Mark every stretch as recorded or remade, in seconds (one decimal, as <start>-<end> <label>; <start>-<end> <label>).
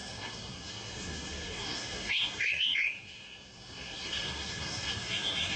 0.0-5.6 remade